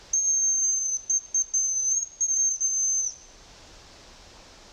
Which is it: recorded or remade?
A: recorded